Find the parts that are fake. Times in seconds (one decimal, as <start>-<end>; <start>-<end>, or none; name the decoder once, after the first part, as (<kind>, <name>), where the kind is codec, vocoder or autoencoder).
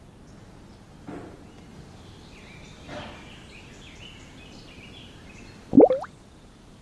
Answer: none